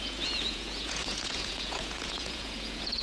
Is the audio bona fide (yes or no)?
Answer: no